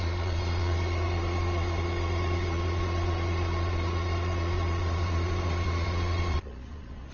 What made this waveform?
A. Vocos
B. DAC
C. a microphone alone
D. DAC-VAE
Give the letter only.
A